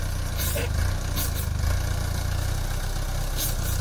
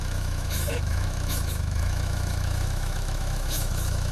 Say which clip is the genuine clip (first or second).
first